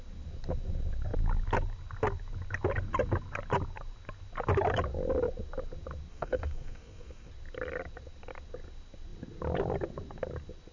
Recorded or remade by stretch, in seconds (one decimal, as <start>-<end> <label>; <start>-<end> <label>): 0.0-6.1 recorded; 6.1-7.3 remade; 7.3-10.7 recorded